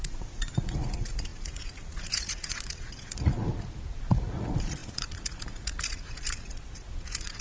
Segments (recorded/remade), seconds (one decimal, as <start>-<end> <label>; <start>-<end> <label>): 0.0-7.4 remade